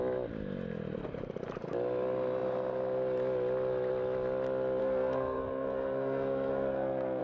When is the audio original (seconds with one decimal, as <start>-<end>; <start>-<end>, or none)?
0.0-4.8